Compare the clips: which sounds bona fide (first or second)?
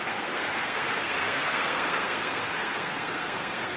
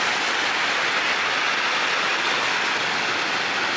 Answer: second